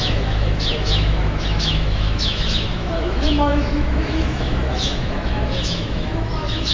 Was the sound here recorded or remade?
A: remade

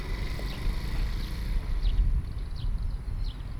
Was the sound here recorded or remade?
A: recorded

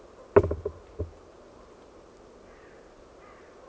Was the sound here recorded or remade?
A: recorded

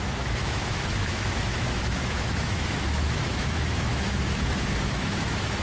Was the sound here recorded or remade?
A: remade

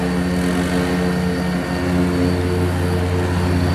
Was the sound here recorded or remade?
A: recorded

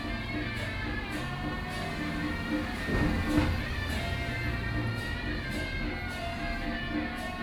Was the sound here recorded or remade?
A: recorded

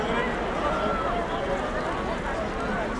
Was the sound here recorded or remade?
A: recorded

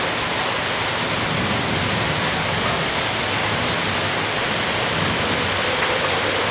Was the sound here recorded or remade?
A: recorded